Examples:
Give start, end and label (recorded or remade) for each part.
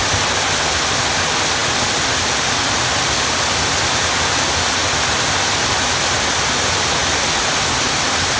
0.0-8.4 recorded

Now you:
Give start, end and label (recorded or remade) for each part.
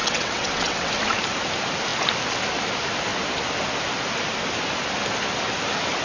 0.0-0.9 remade; 0.9-6.0 recorded